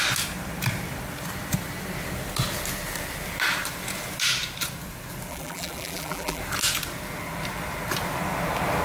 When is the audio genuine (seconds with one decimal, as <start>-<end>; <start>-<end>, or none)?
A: 0.0-5.3; 6.4-8.8